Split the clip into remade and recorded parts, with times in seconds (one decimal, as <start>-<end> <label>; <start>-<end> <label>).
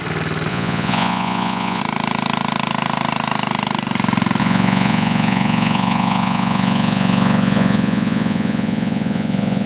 0.0-0.5 recorded; 0.5-1.8 remade; 1.8-4.4 recorded; 4.4-9.7 remade